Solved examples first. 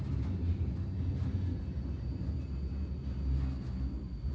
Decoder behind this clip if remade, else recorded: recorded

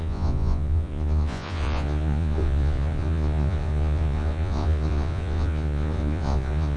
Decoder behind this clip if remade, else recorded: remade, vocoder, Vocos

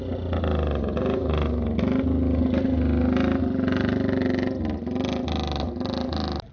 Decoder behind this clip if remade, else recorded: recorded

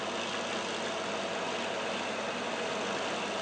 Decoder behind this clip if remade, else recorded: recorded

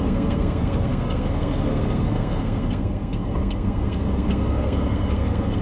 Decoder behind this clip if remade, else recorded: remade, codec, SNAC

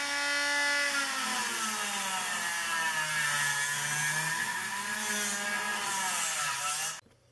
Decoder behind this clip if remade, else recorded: recorded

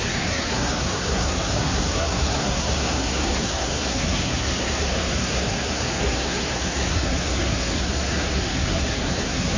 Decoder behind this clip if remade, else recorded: remade, codec, SNAC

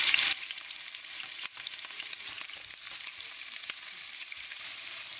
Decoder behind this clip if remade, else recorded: remade, vocoder, BigVGAN v2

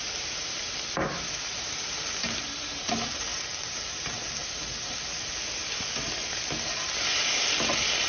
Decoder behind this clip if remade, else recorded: recorded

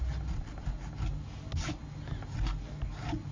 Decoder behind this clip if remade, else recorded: recorded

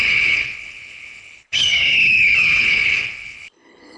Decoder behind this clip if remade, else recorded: remade, codec, HILCodec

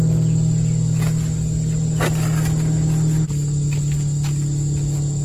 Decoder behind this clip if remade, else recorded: recorded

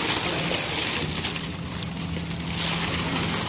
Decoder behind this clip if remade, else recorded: recorded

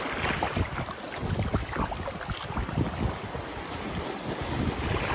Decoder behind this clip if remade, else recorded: recorded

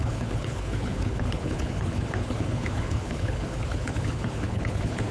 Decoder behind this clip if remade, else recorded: remade, codec, HILCodec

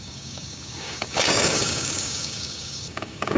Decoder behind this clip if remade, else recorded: remade, codec, DAC